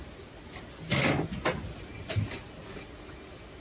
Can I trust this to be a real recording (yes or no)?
yes